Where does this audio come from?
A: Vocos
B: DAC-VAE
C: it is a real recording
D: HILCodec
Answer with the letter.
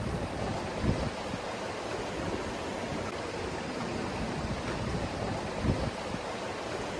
C